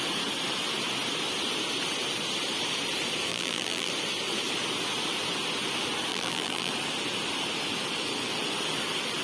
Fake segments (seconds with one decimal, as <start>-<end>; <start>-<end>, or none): 3.3-3.9; 6.1-6.7